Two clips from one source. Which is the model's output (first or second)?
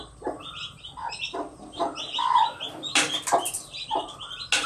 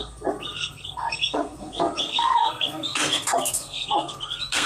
second